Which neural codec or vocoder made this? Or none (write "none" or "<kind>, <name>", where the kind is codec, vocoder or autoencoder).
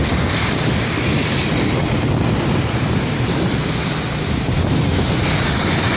none